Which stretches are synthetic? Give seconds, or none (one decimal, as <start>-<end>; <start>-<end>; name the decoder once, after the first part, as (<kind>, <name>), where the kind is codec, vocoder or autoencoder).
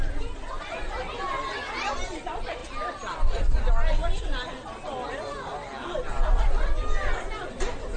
none